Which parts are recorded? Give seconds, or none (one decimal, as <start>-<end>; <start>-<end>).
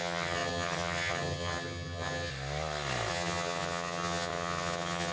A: 2.3-3.1